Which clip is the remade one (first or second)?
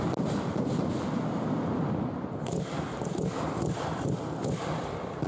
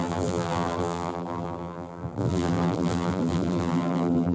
second